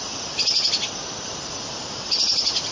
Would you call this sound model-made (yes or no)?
no